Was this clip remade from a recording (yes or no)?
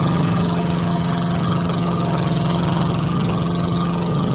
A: yes